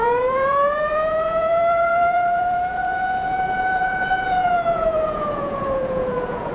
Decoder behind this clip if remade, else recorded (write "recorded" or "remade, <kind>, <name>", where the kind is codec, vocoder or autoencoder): remade, vocoder, Vocos